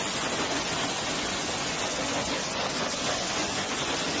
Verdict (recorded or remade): remade